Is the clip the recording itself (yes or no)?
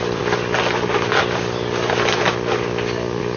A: yes